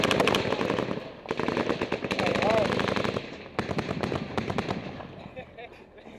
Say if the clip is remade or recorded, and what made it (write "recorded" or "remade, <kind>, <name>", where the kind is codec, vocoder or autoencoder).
recorded